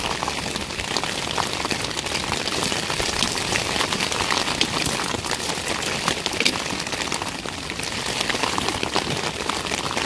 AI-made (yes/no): no